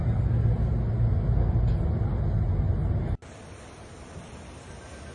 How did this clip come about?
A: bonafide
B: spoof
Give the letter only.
A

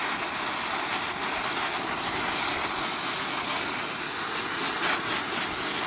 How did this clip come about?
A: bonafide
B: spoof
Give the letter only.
A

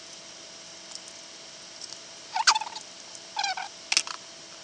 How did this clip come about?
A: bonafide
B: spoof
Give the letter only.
A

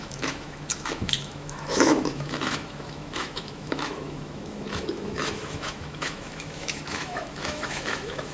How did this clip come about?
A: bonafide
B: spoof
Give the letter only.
B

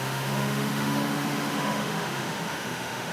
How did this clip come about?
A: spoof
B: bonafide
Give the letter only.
A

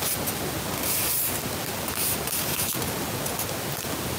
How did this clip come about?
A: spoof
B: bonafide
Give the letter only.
B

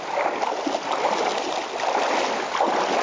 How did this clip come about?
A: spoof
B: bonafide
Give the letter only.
B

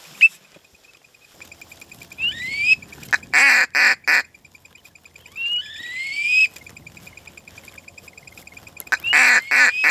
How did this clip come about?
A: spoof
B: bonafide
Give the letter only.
B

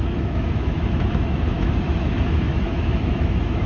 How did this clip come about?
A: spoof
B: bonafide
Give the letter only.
A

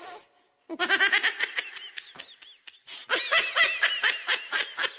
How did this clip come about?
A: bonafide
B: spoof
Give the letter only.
A